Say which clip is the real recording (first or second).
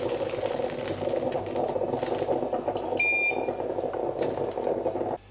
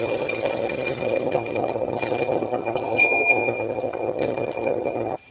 first